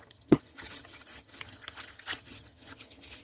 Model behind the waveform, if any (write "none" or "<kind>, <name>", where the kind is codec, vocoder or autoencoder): vocoder, HiFi-GAN